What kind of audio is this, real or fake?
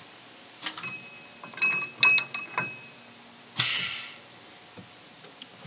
real